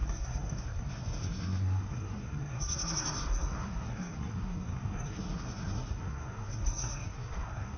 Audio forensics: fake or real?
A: fake